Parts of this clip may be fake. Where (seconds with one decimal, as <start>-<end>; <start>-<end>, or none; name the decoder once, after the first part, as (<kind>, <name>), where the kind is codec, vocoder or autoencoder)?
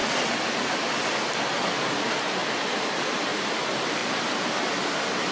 2.4-3.5 (vocoder, BigVGAN v2)